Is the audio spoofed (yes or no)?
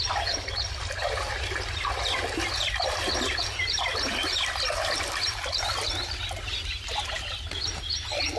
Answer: no